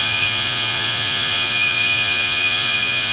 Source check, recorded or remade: remade